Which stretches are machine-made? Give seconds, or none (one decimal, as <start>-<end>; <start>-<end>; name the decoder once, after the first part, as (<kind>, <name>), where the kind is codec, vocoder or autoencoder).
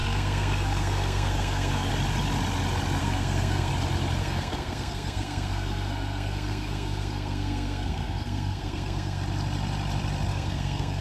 0.0-1.9 (codec, SNAC); 3.0-3.7; 4.2-9.2; 10.3-11.0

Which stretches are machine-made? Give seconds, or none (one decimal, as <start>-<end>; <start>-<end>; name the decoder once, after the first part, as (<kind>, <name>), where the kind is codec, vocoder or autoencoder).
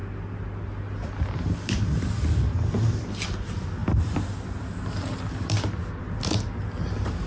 none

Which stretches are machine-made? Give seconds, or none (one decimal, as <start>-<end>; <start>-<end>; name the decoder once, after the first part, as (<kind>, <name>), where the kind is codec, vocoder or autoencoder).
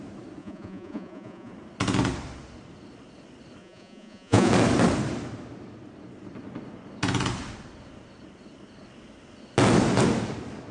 0.4-1.5 (vocoder, Vocos); 3.6-4.5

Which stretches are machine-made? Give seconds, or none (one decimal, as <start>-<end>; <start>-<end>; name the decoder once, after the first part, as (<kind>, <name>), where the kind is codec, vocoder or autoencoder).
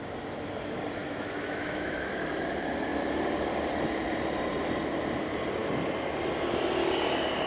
1.0-2.1 (autoencoder, DAC-VAE)